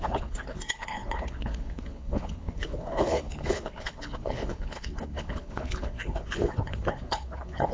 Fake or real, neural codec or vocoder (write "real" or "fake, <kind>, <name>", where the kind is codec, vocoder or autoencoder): fake, codec, HILCodec